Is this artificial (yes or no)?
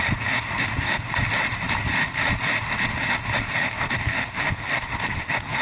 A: no